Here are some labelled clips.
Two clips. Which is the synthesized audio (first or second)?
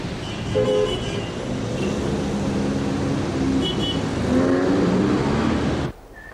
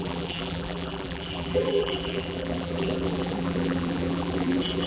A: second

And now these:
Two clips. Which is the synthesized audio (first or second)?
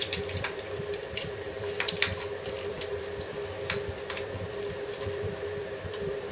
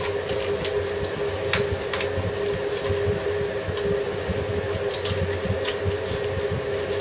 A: first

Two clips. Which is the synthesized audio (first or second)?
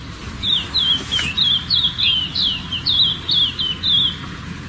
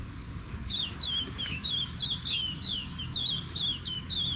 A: second